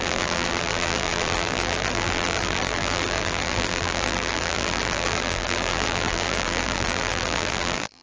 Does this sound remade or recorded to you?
remade